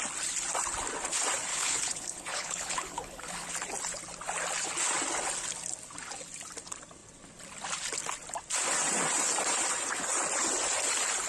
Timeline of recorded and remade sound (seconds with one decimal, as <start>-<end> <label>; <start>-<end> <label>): 0.0-1.5 recorded; 1.5-3.5 remade; 3.5-11.3 recorded